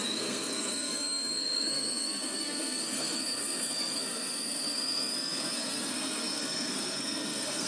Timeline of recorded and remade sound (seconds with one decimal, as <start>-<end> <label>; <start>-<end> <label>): 0.0-7.7 remade